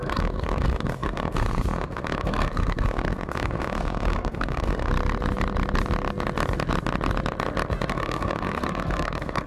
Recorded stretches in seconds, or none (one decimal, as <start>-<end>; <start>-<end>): 4.9-7.9